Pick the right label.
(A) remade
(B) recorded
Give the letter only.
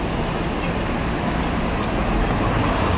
B